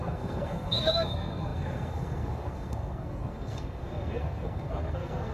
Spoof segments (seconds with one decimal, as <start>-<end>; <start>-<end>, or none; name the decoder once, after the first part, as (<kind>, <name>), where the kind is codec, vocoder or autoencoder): 0.0-5.3 (codec, SNAC)